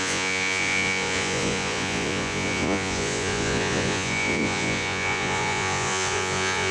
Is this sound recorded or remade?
remade